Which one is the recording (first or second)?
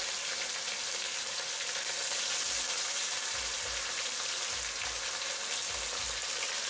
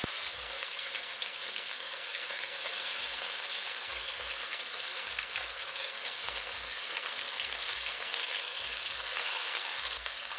first